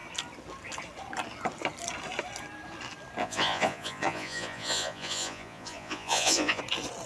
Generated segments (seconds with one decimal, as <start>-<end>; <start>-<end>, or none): 3.2-6.6